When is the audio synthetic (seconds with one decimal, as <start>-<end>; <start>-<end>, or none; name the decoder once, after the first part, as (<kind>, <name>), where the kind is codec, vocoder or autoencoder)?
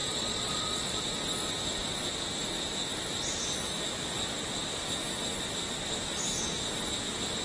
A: 0.0-1.0 (vocoder, Vocos)